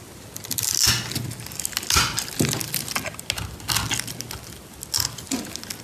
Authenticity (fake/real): real